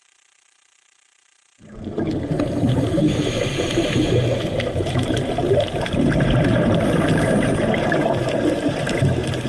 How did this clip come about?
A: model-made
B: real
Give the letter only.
A